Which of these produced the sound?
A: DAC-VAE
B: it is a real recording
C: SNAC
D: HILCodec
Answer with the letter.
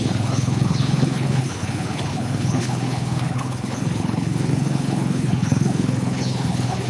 D